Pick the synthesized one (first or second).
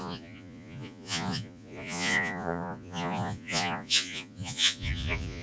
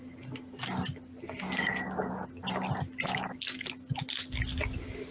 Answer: first